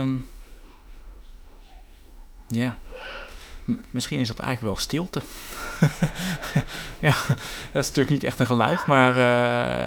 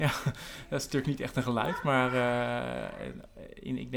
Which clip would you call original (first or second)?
second